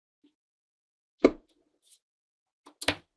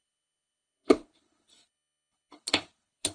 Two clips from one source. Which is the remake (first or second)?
second